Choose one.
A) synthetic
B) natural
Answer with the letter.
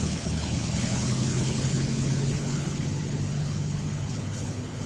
A